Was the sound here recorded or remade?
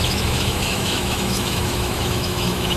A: remade